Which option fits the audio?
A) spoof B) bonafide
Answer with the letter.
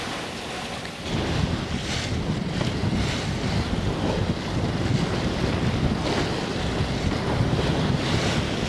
B